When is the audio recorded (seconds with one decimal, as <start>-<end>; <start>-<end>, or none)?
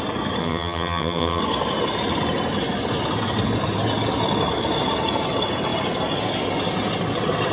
0.0-0.4; 1.4-7.5